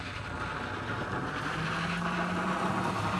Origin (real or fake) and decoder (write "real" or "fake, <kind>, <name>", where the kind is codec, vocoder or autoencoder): real